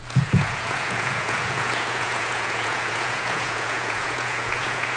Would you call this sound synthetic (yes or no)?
yes